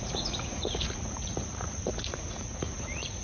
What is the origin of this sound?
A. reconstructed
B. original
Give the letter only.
A